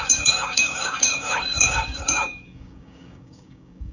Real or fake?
fake